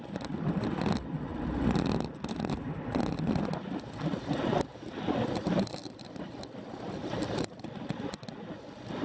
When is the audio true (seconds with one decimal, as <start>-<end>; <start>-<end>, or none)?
0.0-9.0